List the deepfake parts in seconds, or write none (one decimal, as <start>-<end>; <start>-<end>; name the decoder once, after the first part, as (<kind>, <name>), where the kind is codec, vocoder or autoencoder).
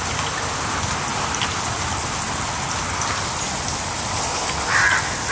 none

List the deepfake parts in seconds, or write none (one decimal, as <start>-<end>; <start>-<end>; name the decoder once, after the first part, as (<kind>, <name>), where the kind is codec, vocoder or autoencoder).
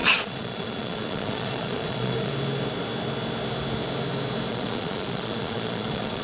0.0-2.3 (vocoder, Vocos); 4.5-6.2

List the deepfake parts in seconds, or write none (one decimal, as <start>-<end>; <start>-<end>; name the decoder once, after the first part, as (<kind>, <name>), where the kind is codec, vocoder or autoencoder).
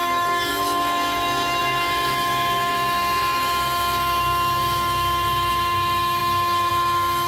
0.0-7.3 (autoencoder, DAC-VAE)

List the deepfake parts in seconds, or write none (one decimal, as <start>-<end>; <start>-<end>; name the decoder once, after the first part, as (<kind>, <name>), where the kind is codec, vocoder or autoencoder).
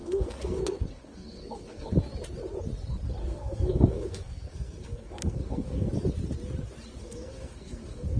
0.0-1.9 (codec, SNAC); 3.2-5.9; 7.0-8.2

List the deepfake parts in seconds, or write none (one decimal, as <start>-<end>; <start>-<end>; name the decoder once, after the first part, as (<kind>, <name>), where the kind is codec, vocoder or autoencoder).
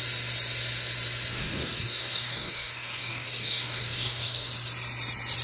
1.3-4.5 (codec, DAC)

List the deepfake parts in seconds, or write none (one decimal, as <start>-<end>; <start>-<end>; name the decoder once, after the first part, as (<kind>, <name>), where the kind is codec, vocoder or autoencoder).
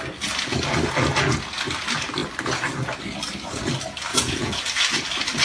4.1-4.6 (vocoder, Vocos)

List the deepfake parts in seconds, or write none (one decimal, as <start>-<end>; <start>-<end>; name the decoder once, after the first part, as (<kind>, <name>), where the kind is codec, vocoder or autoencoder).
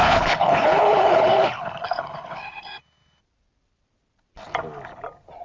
0.0-3.2 (codec, HILCodec)